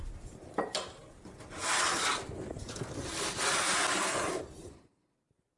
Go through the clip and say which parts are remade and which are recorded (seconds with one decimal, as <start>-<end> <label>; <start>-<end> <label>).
0.0-5.6 recorded